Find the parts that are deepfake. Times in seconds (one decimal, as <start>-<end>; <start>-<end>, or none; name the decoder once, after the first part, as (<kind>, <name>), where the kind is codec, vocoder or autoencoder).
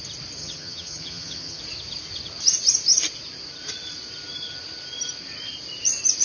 0.4-1.6 (vocoder, HiFi-GAN)